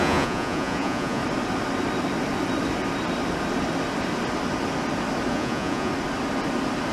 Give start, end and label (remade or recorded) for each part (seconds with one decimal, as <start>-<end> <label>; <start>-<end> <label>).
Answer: 0.0-1.2 remade; 1.2-5.3 recorded; 5.3-5.9 remade; 5.9-6.9 recorded